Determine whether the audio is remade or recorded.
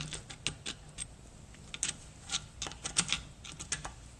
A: recorded